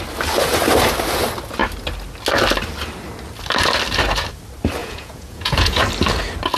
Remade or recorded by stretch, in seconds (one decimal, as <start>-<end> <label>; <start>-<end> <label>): 0.0-4.8 recorded; 4.8-5.8 remade; 5.8-6.6 recorded